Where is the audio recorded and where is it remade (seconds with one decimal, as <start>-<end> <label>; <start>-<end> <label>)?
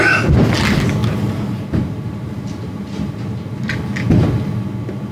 0.0-1.0 recorded; 1.0-3.7 remade; 3.7-5.1 recorded